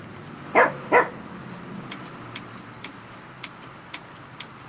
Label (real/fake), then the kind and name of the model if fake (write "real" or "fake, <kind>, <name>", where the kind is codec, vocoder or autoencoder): real